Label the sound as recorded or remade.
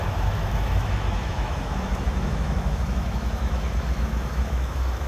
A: remade